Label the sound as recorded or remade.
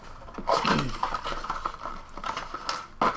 recorded